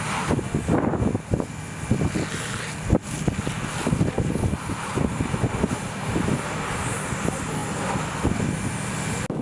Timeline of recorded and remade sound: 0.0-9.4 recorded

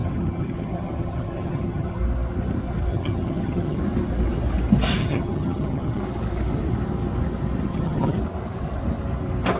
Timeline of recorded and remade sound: 0.0-2.0 remade; 2.0-2.9 recorded; 2.9-3.8 remade; 3.8-5.0 recorded; 5.0-6.0 remade; 6.0-7.7 recorded; 7.7-8.2 remade; 8.2-9.6 recorded

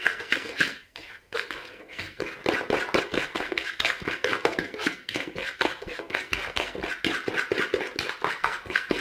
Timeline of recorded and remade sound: 0.0-2.4 remade; 2.4-3.0 recorded; 3.0-6.8 remade; 6.8-8.3 recorded; 8.3-9.0 remade

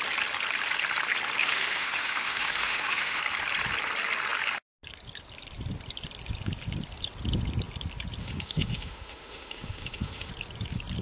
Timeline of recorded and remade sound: 0.0-1.4 recorded; 1.4-3.2 remade; 3.2-8.2 recorded; 8.2-10.3 remade; 10.3-11.0 recorded